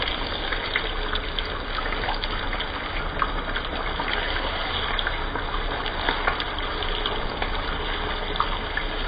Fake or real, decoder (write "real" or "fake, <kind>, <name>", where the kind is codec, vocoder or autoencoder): real